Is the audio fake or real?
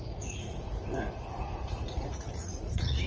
fake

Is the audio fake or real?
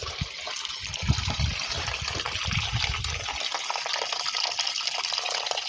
real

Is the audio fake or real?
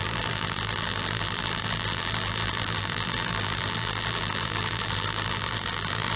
fake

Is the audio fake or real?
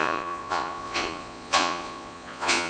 fake